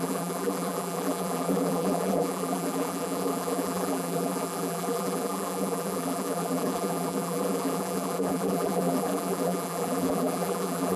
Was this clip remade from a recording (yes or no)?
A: yes